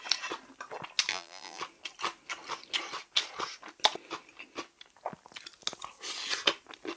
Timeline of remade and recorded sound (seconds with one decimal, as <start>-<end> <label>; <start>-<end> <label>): 0.0-1.1 recorded; 1.1-1.6 remade; 1.6-7.0 recorded